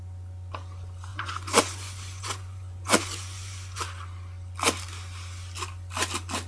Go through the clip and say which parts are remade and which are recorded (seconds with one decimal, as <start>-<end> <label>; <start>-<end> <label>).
0.0-1.1 recorded; 1.1-3.8 remade; 3.8-6.5 recorded